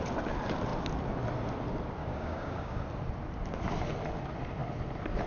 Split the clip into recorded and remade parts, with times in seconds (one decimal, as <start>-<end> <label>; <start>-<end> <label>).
0.0-2.0 recorded; 2.0-2.8 remade; 2.8-5.3 recorded